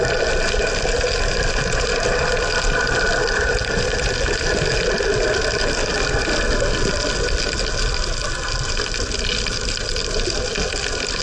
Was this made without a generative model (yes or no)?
yes